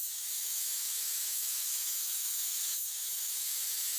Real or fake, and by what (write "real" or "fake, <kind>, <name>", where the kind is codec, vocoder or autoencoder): fake, autoencoder, DAC-VAE